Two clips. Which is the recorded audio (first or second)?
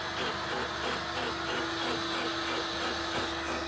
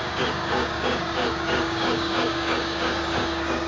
first